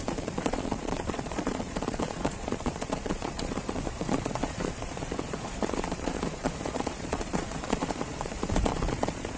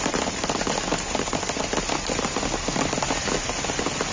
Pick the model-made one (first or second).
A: first